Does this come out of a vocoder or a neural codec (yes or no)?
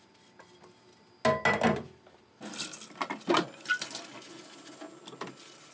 no